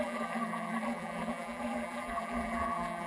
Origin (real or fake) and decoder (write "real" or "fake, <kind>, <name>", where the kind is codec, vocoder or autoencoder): fake, vocoder, BigVGAN v2